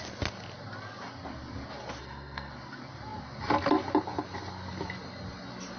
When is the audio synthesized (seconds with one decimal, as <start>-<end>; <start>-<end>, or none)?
2.0-2.5